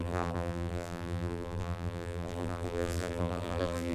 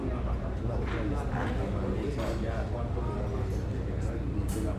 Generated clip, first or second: first